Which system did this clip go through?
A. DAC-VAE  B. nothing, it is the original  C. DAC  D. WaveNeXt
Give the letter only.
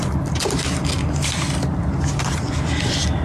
B